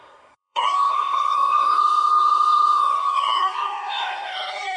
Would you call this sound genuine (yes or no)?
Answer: no